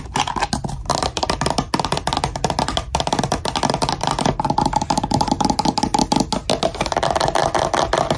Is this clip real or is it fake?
real